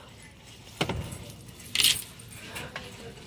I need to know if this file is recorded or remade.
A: recorded